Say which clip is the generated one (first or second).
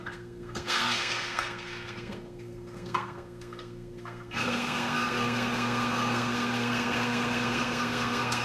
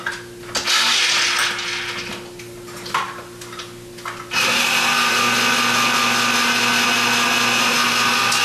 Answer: first